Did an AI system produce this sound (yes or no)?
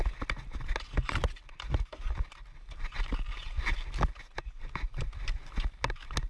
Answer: no